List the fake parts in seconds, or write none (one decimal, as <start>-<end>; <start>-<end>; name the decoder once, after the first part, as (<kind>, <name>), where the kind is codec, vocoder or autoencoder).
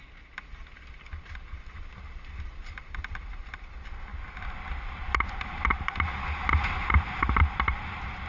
none